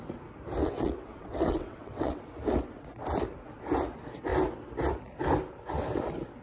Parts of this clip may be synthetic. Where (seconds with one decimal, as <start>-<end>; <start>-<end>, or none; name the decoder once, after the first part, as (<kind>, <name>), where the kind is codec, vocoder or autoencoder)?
0.6-2.2 (vocoder, WaveNeXt)